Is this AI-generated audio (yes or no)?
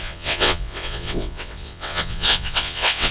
yes